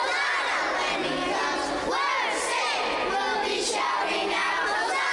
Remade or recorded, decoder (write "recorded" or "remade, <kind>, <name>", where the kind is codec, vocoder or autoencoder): recorded